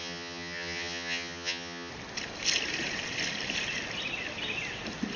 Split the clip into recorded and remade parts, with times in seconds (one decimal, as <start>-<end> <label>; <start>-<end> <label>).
0.0-1.9 remade; 1.9-5.2 recorded